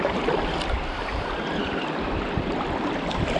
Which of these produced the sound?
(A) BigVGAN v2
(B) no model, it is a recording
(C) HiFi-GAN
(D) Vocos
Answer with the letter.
A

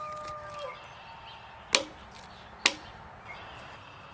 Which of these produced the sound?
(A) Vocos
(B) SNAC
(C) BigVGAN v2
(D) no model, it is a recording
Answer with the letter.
D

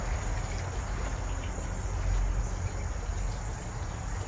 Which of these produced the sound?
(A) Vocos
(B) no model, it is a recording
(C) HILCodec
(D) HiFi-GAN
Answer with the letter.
B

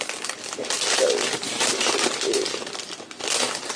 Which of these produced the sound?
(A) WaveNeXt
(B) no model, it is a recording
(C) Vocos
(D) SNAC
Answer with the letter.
B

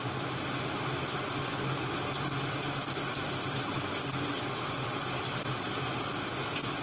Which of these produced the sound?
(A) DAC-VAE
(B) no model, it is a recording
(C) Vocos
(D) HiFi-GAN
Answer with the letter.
B